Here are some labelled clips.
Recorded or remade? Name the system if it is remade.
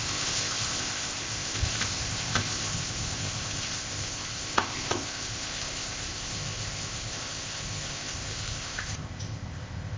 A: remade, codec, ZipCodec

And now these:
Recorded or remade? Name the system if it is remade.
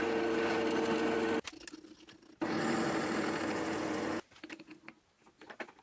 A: recorded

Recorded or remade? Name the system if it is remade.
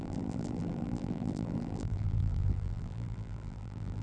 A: remade, vocoder, BigVGAN v2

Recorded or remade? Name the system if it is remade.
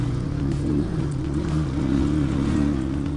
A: remade, vocoder, Vocos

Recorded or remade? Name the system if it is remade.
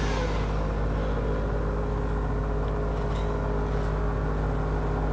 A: recorded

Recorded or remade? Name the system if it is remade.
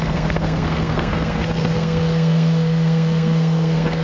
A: remade, codec, SNAC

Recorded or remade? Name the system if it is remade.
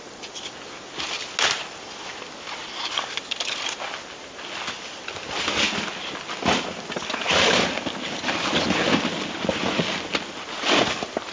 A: recorded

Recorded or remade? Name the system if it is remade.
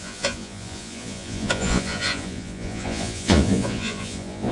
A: remade, vocoder, Vocos